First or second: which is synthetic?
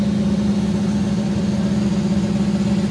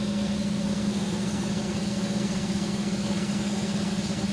second